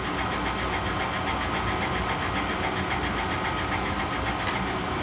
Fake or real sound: real